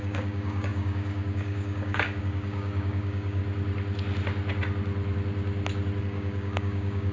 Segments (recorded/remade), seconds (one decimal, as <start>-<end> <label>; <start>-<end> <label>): 0.0-3.4 remade; 3.4-6.0 recorded; 6.0-7.1 remade